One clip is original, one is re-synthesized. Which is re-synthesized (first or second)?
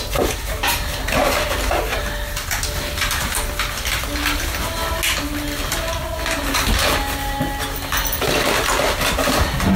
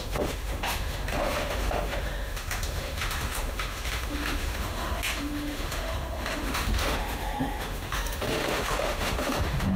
second